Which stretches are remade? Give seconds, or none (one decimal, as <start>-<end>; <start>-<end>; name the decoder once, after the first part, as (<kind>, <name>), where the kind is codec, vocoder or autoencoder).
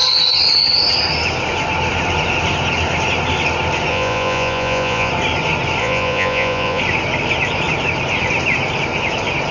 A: 3.9-5.1 (vocoder, Vocos); 5.8-6.8